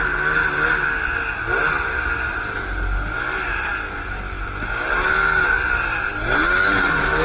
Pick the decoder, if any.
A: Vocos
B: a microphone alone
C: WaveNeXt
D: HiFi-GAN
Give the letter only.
B